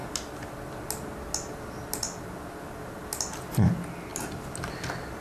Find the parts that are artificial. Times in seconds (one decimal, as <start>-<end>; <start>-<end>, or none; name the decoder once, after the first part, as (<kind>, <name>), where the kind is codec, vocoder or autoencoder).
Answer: none

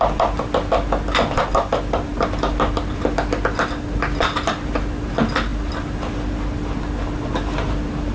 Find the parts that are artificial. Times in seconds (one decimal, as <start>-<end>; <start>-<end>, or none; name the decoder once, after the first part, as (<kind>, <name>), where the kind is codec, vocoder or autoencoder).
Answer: none

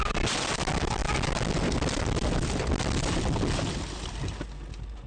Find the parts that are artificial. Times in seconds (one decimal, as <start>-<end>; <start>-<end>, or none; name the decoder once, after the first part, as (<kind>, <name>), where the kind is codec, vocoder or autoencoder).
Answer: none